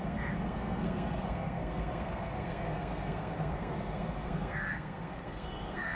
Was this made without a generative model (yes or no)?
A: no